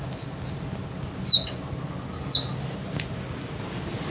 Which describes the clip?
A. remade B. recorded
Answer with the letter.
B